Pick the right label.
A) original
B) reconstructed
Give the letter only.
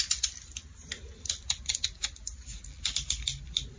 A